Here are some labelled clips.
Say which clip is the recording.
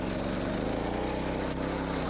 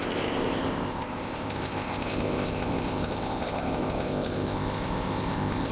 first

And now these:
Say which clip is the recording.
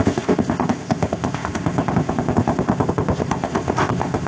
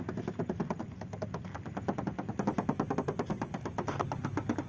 second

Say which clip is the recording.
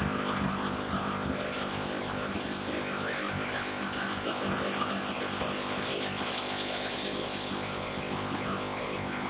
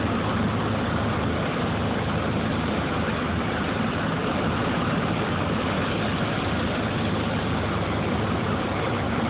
second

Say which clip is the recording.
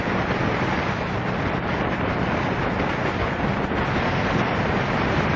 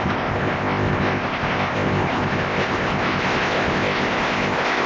first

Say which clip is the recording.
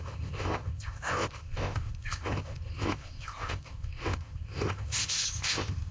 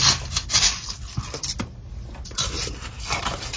second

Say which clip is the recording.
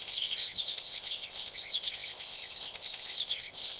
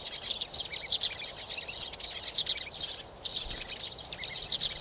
second